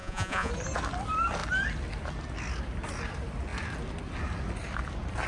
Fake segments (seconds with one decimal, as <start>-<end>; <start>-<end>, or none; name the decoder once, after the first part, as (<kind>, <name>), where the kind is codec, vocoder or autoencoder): 0.0-0.5 (vocoder, Vocos)